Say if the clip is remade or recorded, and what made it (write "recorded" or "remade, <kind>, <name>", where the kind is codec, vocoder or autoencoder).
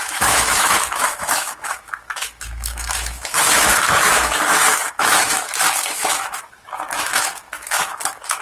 remade, autoencoder, DAC-VAE